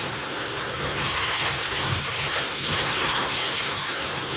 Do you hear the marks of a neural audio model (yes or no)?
yes